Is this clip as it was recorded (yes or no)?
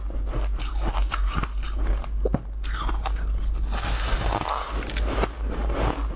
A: yes